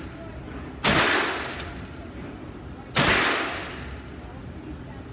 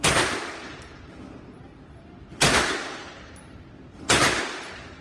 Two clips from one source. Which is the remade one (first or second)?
second